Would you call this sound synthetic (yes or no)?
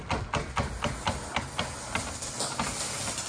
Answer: no